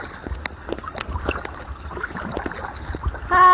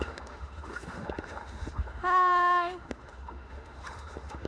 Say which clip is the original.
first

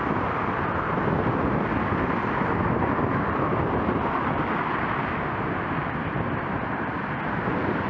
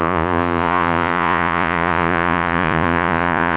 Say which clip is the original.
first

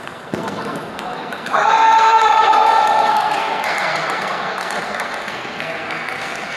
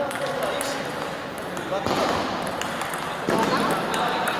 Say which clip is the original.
second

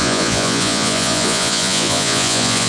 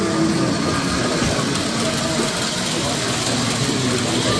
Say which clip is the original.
second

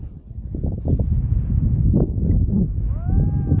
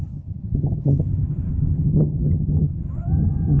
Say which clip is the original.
first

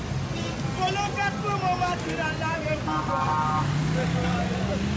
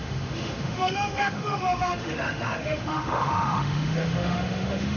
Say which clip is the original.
first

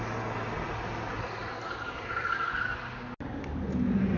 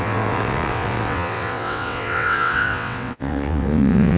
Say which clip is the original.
first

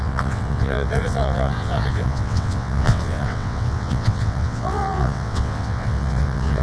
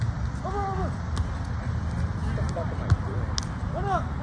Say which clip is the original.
second